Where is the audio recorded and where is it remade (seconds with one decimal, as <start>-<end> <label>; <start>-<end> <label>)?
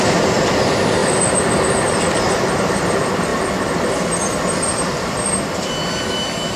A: 0.0-6.6 recorded